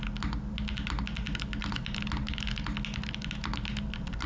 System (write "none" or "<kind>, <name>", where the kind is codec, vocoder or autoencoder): none